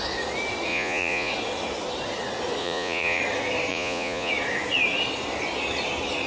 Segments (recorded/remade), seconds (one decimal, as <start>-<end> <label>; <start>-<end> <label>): 0.0-0.7 recorded; 0.7-1.3 remade; 1.3-2.6 recorded; 2.6-3.2 remade; 3.2-3.7 recorded; 3.7-4.3 remade; 4.3-6.3 recorded